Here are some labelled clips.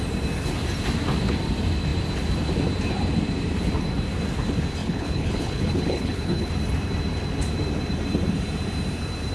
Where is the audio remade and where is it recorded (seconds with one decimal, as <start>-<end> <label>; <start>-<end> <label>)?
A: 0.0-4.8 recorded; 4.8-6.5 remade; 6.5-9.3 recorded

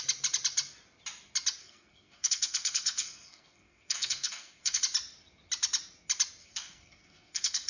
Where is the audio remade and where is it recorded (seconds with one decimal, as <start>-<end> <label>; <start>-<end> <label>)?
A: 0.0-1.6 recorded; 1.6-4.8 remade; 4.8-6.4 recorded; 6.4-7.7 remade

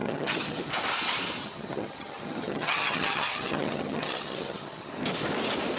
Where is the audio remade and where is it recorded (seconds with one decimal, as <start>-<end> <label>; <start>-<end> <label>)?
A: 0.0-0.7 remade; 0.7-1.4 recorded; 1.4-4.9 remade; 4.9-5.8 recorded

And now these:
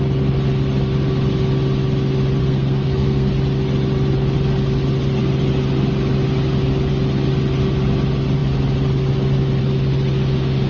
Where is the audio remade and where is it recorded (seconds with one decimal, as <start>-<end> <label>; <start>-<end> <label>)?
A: 0.0-2.4 recorded; 2.4-3.3 remade; 3.3-10.7 recorded